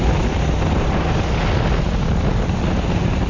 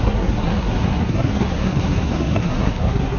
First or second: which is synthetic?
second